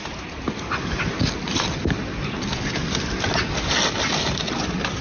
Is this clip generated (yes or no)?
no